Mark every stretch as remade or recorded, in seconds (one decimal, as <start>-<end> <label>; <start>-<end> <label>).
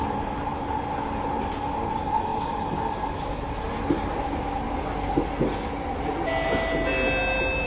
0.0-7.7 recorded